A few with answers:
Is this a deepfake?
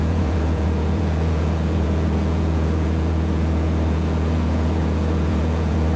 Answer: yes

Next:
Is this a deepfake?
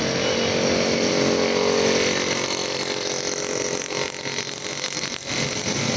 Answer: no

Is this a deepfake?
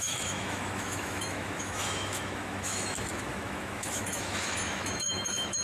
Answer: yes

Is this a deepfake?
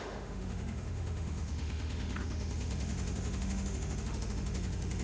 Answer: yes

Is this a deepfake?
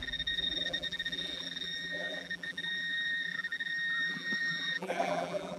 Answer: yes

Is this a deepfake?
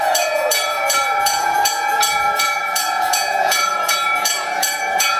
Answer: yes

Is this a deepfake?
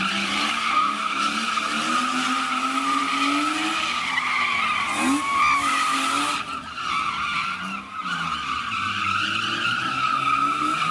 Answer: no